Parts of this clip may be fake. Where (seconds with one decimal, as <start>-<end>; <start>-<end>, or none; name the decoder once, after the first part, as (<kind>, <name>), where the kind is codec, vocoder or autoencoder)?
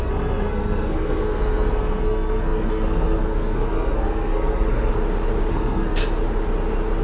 0.0-4.9 (codec, SNAC); 5.5-6.0